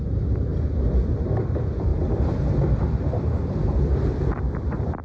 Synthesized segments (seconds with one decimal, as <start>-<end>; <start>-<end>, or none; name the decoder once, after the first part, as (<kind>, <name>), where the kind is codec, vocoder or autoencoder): 0.5-1.1 (vocoder, BigVGAN v2); 1.9-5.0